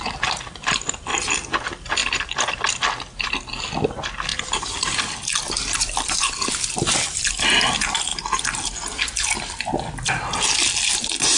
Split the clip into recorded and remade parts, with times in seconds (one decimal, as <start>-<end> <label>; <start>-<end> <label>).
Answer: 0.0-2.0 recorded; 2.0-2.6 remade; 2.6-4.3 recorded; 4.3-7.3 remade; 7.3-11.4 recorded